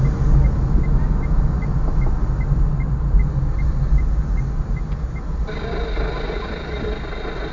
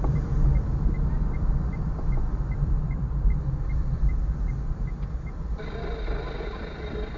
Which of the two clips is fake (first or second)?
second